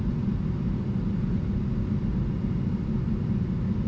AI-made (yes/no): no